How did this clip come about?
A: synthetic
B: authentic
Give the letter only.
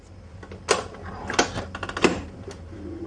B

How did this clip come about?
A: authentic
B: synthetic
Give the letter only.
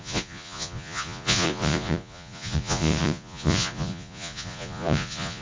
B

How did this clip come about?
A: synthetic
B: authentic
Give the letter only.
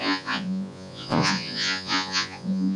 A